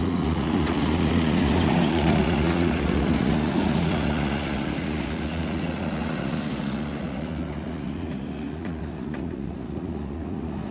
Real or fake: fake